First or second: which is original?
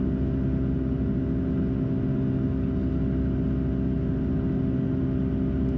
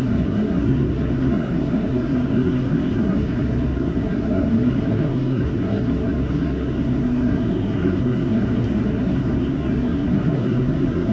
first